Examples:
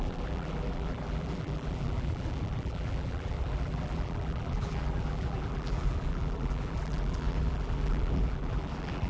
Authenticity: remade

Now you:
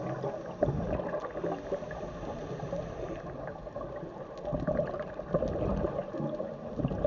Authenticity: recorded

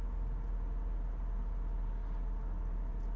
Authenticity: recorded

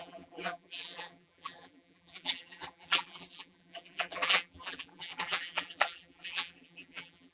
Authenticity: remade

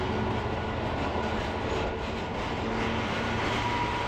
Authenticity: recorded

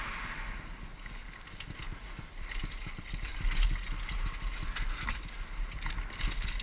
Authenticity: recorded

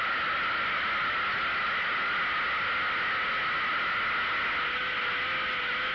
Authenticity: recorded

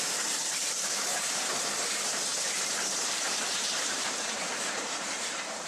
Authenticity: remade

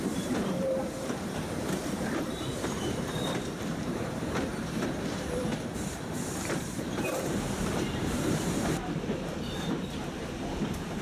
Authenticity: remade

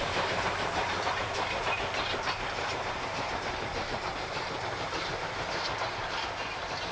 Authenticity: remade